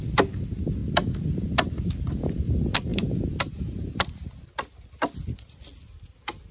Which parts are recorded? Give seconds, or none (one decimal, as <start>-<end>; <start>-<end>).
0.0-2.9; 4.3-6.5